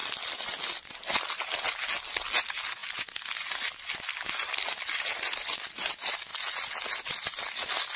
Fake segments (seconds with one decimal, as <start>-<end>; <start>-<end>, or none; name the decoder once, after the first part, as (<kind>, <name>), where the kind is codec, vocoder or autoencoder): none